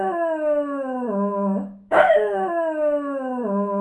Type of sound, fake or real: fake